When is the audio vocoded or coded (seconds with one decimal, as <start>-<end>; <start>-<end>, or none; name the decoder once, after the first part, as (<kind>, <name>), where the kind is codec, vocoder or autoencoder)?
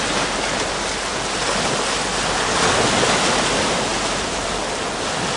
none